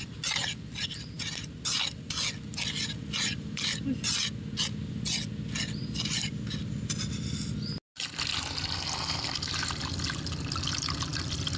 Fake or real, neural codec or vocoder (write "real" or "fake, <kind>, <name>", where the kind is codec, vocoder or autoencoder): real